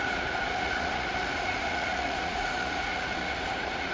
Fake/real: fake